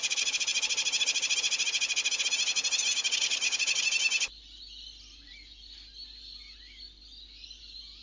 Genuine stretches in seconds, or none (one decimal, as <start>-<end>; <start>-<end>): 0.0-8.0